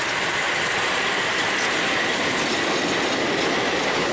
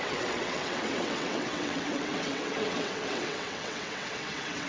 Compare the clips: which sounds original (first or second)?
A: first